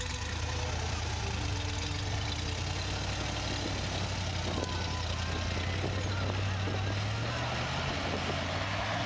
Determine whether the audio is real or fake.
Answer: real